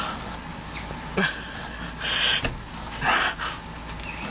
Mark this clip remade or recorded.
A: recorded